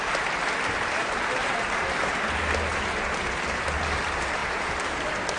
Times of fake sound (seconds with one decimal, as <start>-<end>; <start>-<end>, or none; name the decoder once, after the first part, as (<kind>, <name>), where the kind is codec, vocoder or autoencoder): 1.0-2.2 (vocoder, BigVGAN v2); 4.4-5.0